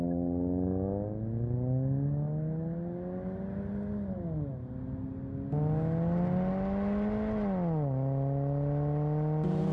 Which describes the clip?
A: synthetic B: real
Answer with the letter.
B